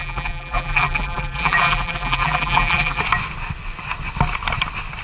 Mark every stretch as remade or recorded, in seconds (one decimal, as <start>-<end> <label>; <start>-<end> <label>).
0.0-3.0 remade; 3.0-5.0 recorded